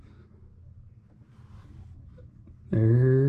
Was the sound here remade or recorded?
recorded